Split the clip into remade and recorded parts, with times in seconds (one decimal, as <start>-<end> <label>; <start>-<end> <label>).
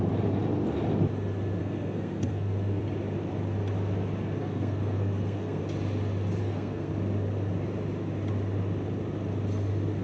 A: 0.0-1.6 recorded; 1.6-2.8 remade; 2.8-4.4 recorded; 4.4-5.6 remade; 5.6-6.4 recorded; 6.4-6.9 remade; 6.9-10.0 recorded